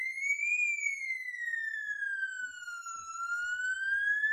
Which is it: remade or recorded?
recorded